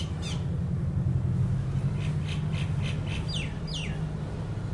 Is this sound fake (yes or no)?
no